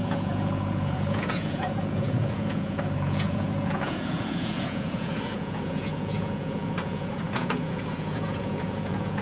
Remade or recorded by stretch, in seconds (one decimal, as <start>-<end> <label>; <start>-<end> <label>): 0.0-9.2 remade